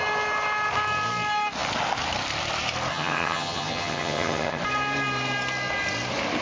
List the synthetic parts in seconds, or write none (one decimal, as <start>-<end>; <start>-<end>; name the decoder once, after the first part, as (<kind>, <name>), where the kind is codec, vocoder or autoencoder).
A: 2.9-4.6 (vocoder, HiFi-GAN)

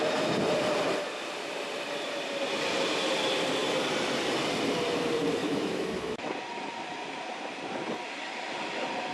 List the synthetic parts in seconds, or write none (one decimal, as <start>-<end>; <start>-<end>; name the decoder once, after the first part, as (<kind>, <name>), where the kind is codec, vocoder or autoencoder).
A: 5.4-6.3 (autoencoder, DAC-VAE)

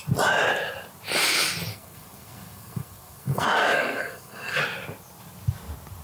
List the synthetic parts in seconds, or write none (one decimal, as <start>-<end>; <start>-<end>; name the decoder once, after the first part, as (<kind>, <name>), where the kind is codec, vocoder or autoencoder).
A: 1.7-4.6 (codec, SNAC)

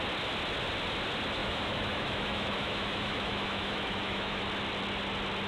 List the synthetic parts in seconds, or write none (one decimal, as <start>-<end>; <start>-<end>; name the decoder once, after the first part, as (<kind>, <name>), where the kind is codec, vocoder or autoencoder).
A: 1.4-4.4 (autoencoder, DAC-VAE)